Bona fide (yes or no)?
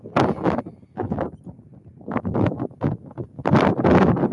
yes